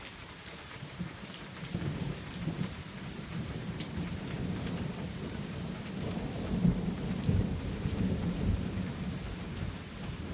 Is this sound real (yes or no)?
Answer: no